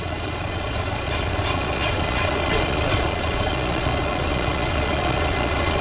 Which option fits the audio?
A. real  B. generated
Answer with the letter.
B